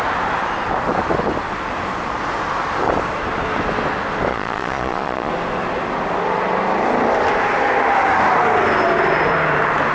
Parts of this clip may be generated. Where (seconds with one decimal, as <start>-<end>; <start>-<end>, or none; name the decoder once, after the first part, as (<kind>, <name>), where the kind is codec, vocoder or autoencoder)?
4.3-5.3 (vocoder, Vocos)